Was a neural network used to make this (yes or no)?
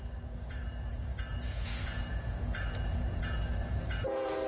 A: yes